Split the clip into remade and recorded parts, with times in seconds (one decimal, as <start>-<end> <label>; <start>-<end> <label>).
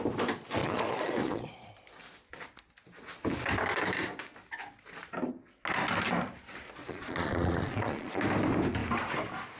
0.0-0.6 recorded; 0.6-1.7 remade; 1.7-6.8 recorded; 6.8-8.2 remade; 8.2-9.6 recorded